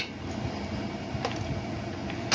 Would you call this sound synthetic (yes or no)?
no